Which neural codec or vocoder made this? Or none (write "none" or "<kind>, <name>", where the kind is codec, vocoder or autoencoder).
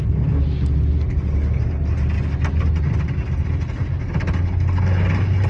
none